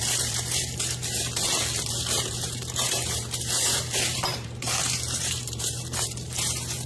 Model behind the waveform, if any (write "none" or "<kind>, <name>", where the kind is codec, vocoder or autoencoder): vocoder, BigVGAN v2